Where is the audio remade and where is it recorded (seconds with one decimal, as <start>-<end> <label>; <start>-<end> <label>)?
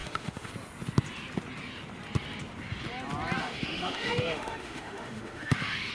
0.0-0.5 remade; 0.5-3.4 recorded; 3.4-5.9 remade